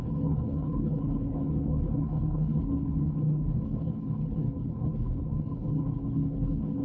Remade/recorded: remade